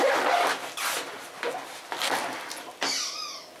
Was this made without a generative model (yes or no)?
yes